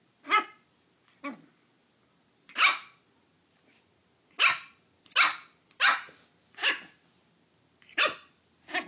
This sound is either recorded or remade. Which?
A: recorded